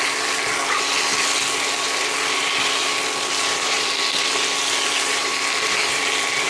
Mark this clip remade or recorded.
recorded